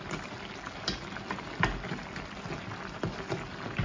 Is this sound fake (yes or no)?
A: no